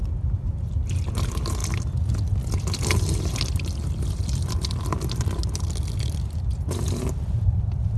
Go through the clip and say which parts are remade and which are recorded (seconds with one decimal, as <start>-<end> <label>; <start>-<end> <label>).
0.0-8.0 recorded